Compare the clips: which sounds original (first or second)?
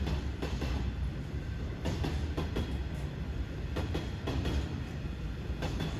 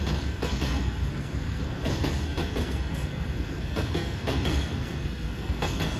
first